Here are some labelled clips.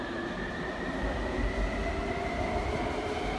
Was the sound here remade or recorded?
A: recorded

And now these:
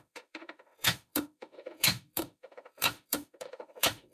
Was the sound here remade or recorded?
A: remade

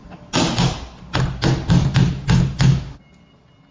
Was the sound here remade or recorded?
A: recorded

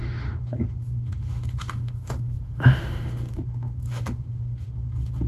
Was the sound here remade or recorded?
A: remade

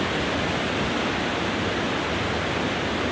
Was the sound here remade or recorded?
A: recorded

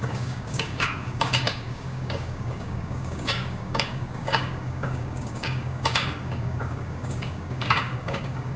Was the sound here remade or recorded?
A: remade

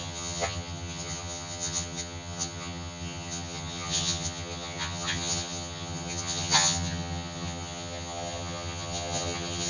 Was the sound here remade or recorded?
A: remade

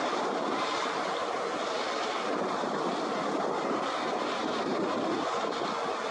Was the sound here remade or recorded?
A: recorded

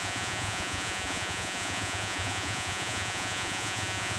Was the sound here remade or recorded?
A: remade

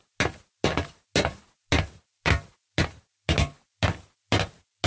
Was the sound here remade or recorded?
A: recorded